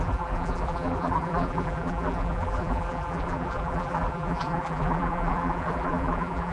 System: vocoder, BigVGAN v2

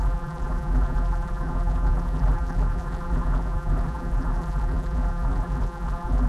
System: vocoder, BigVGAN v2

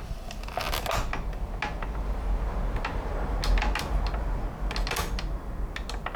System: none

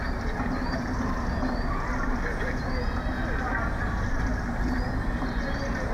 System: none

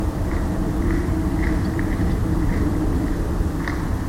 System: none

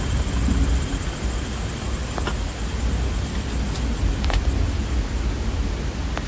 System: none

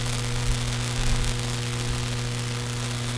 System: none